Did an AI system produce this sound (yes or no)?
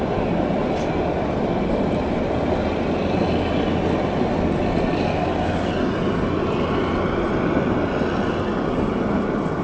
no